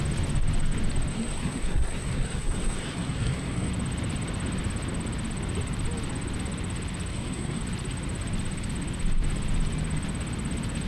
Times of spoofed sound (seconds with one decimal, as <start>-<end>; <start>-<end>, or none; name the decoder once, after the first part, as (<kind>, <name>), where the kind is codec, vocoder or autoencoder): 1.1-3.7 (codec, SNAC); 7.1-7.6

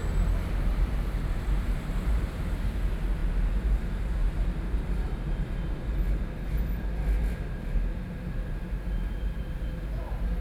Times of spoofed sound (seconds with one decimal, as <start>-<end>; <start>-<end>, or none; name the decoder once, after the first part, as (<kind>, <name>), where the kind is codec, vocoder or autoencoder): 0.7-2.4 (vocoder, BigVGAN v2)

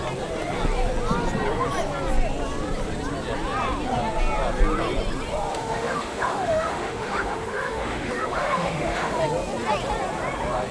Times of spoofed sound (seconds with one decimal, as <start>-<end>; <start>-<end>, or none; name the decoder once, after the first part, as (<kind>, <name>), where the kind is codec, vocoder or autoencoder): 5.5-9.2 (autoencoder, DAC-VAE)

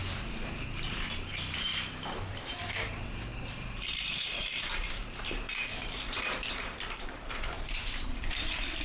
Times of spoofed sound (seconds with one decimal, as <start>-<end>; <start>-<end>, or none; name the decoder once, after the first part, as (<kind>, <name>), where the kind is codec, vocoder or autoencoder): 0.0-8.8 (vocoder, BigVGAN v2)

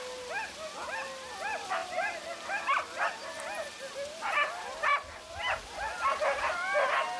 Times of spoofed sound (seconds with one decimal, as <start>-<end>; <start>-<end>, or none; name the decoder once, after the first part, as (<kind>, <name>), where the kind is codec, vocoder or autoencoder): none